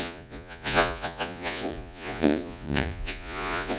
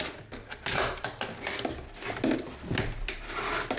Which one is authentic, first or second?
second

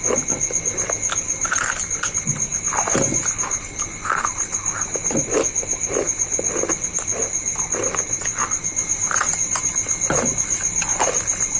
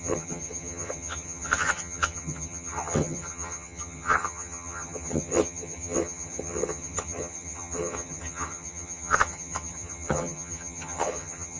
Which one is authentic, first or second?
first